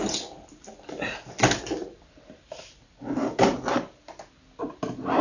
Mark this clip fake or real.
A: real